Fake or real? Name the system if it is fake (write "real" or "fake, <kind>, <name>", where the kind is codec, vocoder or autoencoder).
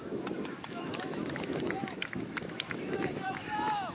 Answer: fake, autoencoder, DAC-VAE